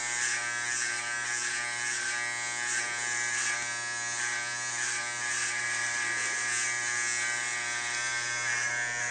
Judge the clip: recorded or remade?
recorded